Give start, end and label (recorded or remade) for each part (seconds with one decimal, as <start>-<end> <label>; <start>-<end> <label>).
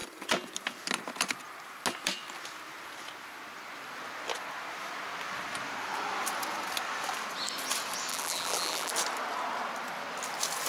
0.0-8.1 recorded; 8.1-8.9 remade; 8.9-10.7 recorded